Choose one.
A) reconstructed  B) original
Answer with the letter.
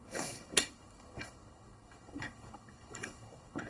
A